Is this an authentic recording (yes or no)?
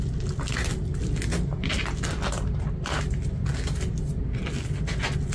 yes